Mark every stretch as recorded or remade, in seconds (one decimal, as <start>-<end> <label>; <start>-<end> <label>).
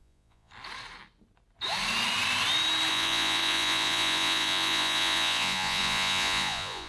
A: 0.0-0.5 remade; 0.5-2.9 recorded; 2.9-6.9 remade